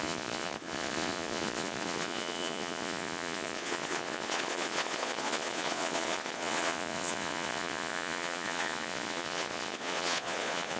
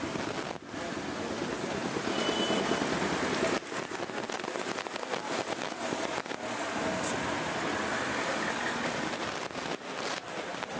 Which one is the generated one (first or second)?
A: first